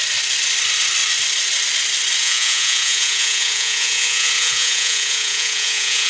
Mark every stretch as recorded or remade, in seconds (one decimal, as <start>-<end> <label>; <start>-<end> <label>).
0.0-2.2 recorded; 2.2-6.1 remade